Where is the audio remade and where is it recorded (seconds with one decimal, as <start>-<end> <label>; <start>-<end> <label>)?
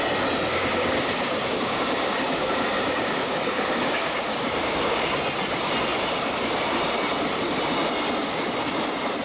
0.0-0.5 recorded; 0.5-5.1 remade; 5.1-9.2 recorded